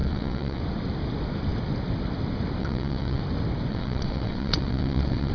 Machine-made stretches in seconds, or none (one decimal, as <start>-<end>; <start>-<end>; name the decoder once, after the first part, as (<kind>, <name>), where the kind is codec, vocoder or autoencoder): 0.0-0.6 (vocoder, WaveNeXt); 2.6-3.2; 3.7-5.3